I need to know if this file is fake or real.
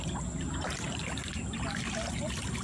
real